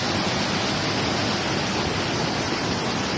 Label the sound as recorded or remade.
recorded